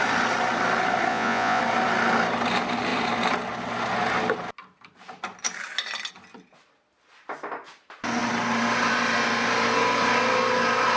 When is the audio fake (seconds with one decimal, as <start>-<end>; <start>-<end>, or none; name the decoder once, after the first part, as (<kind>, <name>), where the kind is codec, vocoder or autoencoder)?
1.1-1.6 (vocoder, Vocos)